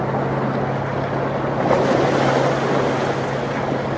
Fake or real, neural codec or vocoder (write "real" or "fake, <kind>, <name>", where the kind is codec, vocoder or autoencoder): real